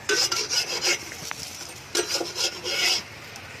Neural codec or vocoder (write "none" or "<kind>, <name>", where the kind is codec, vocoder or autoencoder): vocoder, BigVGAN v2